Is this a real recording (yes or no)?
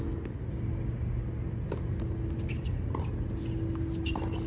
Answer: yes